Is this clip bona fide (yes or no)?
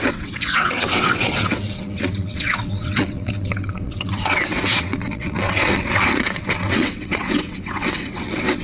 no